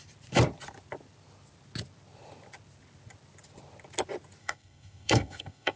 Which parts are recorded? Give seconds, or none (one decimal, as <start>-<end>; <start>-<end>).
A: 0.0-4.4